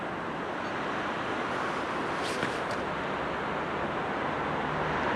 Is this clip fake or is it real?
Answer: real